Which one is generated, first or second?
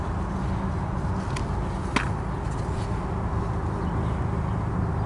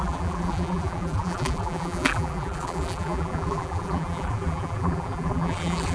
second